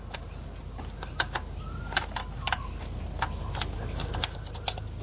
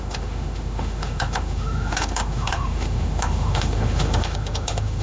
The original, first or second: first